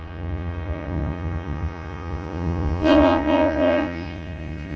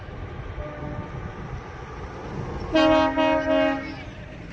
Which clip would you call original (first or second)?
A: second